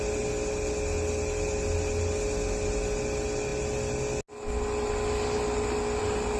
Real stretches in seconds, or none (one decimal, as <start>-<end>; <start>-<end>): 0.0-6.4